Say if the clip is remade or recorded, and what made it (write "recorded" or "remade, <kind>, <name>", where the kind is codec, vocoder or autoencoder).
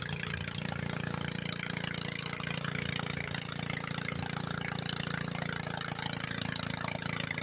recorded